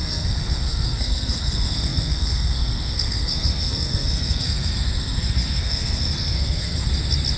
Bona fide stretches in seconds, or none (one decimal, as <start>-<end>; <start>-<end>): 6.9-7.4